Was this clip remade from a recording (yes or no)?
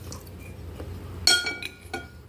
no